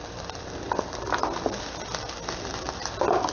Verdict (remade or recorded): recorded